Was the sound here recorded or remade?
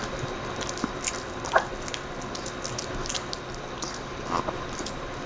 recorded